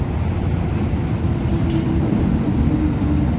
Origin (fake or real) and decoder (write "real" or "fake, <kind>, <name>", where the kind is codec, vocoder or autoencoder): real